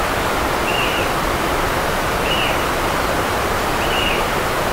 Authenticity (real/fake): fake